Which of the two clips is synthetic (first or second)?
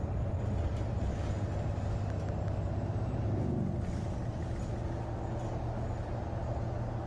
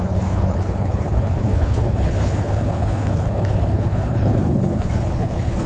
second